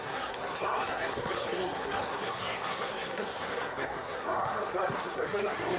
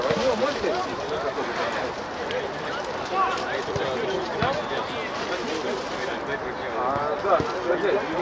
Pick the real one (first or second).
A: second